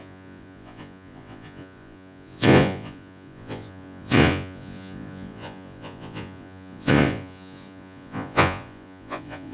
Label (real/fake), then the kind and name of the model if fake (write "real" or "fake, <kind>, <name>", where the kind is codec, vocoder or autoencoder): fake, vocoder, Vocos